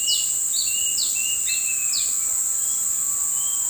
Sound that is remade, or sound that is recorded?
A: recorded